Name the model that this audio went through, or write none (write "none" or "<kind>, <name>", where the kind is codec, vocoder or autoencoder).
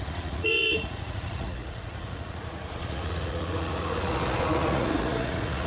vocoder, Vocos